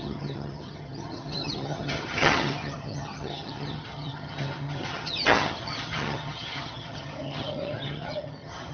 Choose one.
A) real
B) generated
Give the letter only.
B